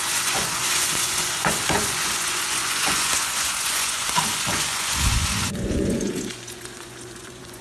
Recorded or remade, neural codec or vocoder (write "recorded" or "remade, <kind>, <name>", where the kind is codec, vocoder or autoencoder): remade, vocoder, Vocos